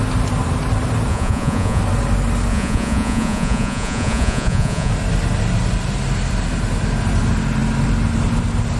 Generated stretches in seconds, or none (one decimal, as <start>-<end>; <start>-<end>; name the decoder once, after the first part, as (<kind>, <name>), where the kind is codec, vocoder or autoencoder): 1.1-1.8 (vocoder, Vocos); 2.5-4.9